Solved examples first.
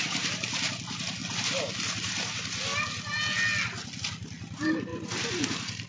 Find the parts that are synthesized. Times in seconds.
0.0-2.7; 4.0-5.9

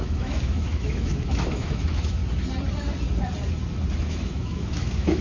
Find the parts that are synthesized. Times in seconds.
0.0-2.2; 4.0-5.2

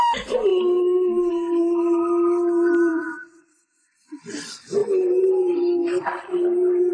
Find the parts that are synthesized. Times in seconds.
2.9-4.2